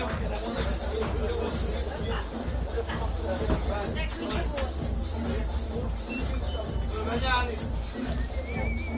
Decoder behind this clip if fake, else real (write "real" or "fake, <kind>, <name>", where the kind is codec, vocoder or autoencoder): real